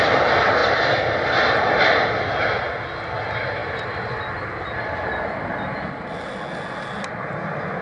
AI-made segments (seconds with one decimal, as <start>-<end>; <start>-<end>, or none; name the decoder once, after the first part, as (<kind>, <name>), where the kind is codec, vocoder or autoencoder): none